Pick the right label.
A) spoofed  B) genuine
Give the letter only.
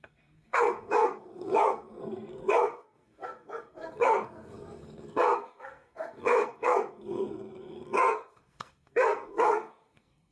A